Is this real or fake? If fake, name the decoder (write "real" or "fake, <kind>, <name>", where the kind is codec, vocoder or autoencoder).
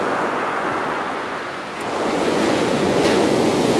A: fake, vocoder, Vocos